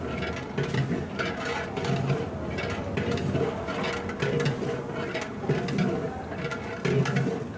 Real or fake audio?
real